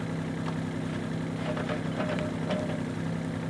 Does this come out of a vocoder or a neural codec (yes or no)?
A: no